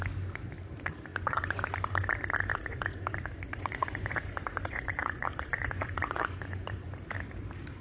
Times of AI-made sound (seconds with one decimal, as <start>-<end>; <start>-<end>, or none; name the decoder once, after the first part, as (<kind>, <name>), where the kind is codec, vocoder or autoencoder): 1.1-1.6 (vocoder, Vocos); 2.5-6.9